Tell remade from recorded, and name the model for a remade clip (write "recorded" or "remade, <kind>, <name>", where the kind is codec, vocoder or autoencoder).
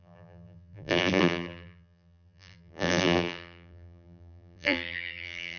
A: remade, vocoder, BigVGAN v2